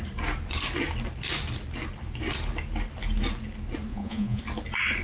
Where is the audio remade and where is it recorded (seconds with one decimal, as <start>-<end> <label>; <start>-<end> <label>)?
0.0-3.9 recorded; 3.9-4.4 remade; 4.4-5.0 recorded